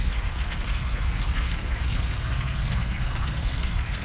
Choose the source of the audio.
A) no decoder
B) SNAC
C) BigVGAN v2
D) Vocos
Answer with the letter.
B